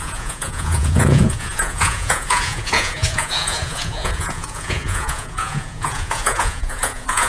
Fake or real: fake